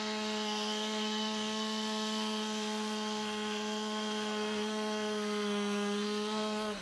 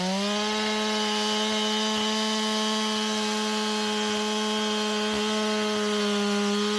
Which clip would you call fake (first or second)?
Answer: first